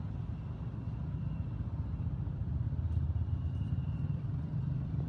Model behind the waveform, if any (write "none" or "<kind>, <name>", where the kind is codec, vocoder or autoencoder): none